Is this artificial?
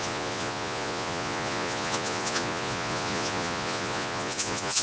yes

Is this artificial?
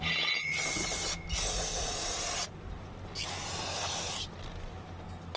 no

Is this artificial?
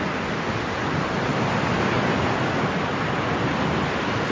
no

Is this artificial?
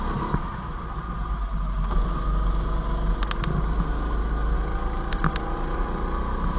no